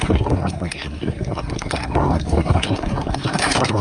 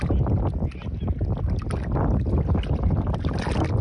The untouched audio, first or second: second